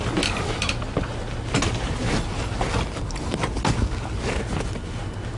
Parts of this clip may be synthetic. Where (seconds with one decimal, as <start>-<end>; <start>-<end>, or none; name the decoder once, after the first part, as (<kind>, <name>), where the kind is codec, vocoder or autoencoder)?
none